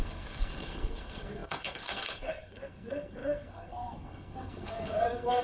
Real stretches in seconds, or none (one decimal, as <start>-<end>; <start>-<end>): none